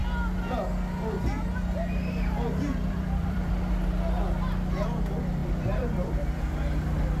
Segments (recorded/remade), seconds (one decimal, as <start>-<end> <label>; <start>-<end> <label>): 0.0-2.9 recorded; 2.9-3.5 remade; 3.5-5.0 recorded; 5.0-7.2 remade